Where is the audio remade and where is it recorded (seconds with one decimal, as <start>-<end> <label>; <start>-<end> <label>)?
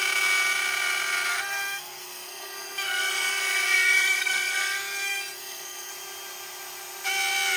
0.0-1.3 recorded; 1.3-5.9 remade; 5.9-7.6 recorded